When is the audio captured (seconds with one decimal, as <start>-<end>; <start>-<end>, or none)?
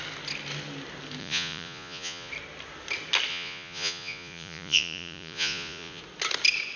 0.0-1.2; 2.3-3.3; 6.0-6.8